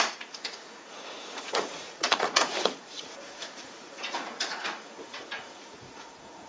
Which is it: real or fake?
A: fake